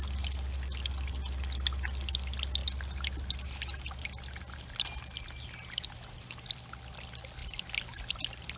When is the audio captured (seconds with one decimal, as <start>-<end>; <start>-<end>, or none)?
0.0-8.6